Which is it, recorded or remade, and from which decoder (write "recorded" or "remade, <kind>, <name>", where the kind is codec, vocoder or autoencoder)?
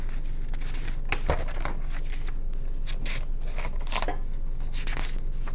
recorded